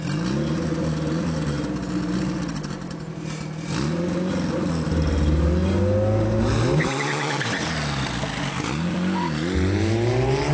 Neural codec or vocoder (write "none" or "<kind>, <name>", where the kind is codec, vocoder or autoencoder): none